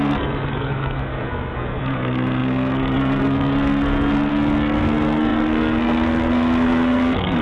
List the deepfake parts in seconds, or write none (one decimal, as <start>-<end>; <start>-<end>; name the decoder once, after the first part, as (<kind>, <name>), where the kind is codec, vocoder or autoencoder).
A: 0.0-7.4 (codec, SNAC)